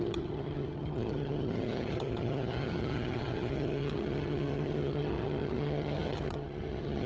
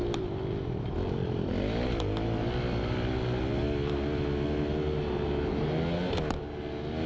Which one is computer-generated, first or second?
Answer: first